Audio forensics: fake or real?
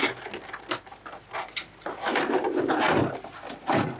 real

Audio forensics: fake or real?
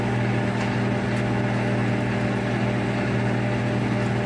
real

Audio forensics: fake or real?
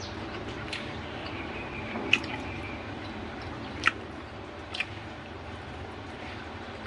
fake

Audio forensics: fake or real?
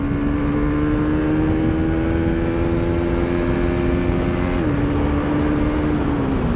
real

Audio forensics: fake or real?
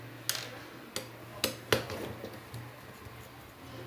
real